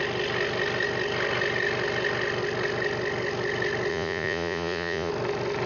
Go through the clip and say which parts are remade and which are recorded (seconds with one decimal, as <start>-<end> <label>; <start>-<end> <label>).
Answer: 0.0-3.9 recorded; 3.9-5.1 remade; 5.1-5.7 recorded